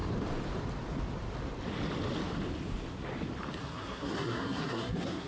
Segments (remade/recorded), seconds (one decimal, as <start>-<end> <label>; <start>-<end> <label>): 0.0-3.6 recorded; 3.6-5.3 remade

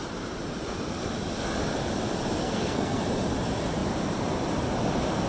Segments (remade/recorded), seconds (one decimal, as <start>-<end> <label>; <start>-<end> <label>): 0.0-2.4 recorded; 2.4-3.0 remade; 3.0-5.3 recorded

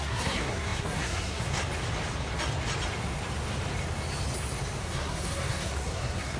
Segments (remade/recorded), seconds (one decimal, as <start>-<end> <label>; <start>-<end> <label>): 0.0-1.6 remade; 1.6-4.8 recorded; 4.8-6.4 remade

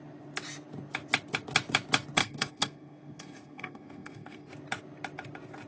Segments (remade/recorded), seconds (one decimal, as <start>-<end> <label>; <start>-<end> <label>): 0.0-2.2 recorded; 2.2-4.5 remade; 4.5-5.7 recorded

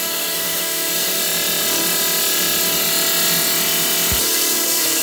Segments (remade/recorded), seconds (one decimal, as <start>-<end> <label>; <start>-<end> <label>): 0.0-1.2 remade; 1.2-4.2 recorded; 4.2-5.0 remade